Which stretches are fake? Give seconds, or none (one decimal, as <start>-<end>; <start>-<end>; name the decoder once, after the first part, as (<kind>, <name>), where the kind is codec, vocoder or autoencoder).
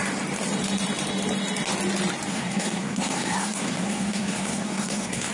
2.3-5.3 (codec, SNAC)